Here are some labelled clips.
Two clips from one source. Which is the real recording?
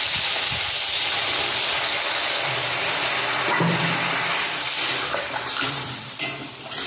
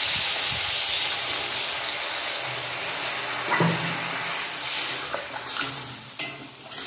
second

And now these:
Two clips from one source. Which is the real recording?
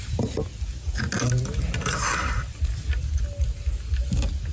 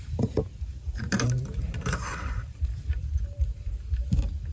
first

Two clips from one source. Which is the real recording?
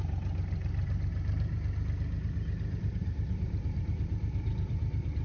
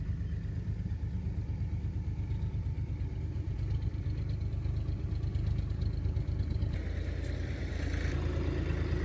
second